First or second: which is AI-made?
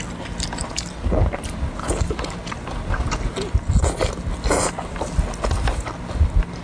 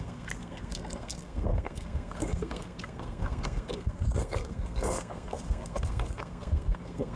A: second